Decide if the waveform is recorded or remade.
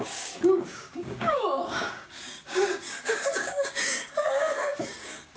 remade